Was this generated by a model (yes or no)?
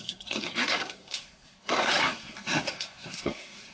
yes